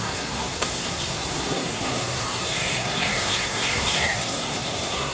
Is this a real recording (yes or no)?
no